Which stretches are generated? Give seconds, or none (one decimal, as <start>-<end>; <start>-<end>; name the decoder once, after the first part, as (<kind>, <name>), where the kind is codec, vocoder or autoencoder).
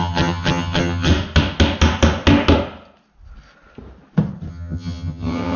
0.0-1.1 (vocoder, HiFi-GAN); 4.5-5.6